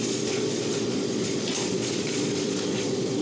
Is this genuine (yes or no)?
no